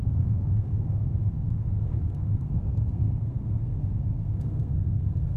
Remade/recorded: remade